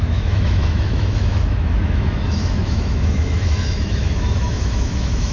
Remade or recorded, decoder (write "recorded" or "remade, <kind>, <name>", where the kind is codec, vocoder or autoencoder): remade, autoencoder, DAC-VAE